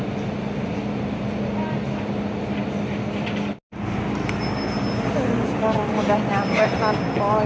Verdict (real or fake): real